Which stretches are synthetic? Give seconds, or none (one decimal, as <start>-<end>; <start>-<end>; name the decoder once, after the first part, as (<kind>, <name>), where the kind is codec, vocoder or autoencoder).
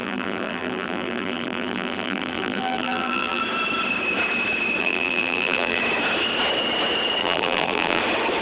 0.0-3.4 (vocoder, BigVGAN v2); 4.8-5.8; 7.2-8.0